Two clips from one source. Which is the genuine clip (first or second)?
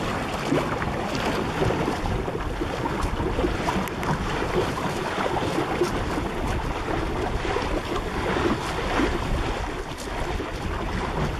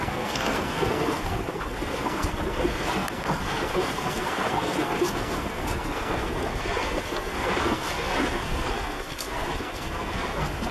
first